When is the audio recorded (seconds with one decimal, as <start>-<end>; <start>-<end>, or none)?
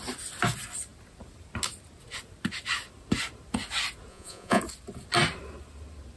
0.0-4.1; 4.6-6.2